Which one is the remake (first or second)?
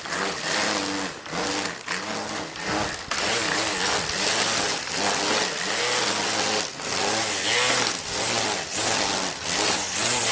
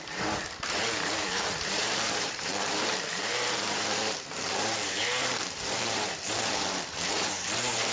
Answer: second